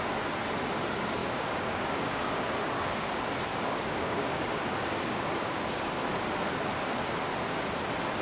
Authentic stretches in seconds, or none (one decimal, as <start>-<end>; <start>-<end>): 0.0-1.2; 3.1-3.5; 5.9-8.2